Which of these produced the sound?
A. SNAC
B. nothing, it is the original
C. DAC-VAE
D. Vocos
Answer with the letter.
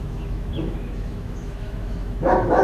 C